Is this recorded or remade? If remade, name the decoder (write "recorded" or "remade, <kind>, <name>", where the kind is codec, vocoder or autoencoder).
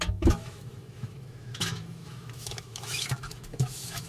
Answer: remade, autoencoder, DAC-VAE